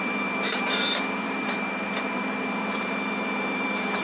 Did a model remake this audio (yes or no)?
yes